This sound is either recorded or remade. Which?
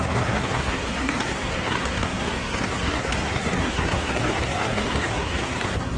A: remade